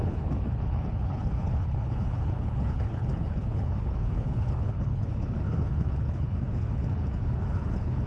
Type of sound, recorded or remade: remade